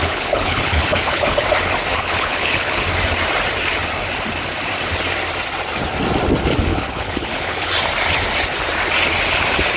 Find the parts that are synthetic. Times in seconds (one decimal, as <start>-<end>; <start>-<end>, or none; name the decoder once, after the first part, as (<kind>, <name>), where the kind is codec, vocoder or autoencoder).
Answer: 0.0-1.4 (codec, HILCodec); 1.9-2.8; 6.7-7.7